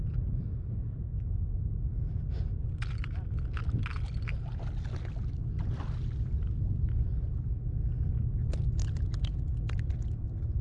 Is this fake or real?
real